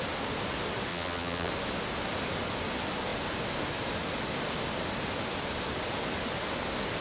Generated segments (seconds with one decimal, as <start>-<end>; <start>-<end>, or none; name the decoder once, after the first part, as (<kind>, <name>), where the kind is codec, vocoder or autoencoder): 0.9-1.5 (vocoder, Vocos)